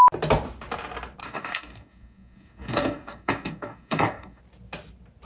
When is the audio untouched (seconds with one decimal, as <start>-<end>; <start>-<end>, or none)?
0.0-1.2; 4.4-5.3